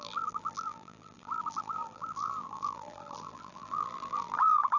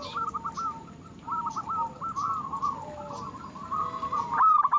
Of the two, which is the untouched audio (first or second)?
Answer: second